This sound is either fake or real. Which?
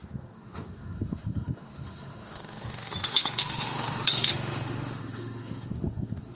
fake